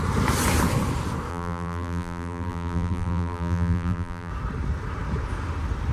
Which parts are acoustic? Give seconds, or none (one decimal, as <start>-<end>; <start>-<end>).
0.0-1.3; 4.3-5.9